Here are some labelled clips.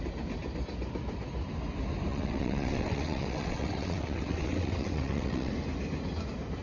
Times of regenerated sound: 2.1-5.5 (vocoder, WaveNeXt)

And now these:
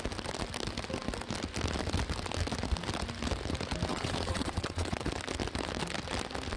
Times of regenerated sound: 3.9-5.1 (vocoder, WaveNeXt)

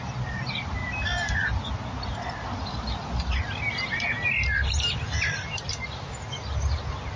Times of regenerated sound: none

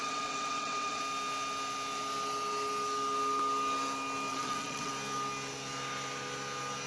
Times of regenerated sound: 0.0-1.0 (vocoder, WaveNeXt); 4.3-4.9